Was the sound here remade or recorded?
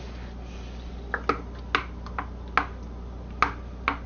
recorded